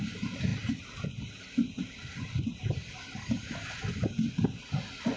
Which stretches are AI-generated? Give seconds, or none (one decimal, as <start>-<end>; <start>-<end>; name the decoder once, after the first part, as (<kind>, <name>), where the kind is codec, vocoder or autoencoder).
none